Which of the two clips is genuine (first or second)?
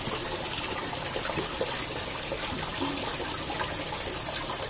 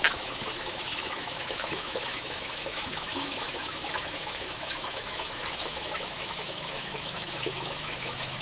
first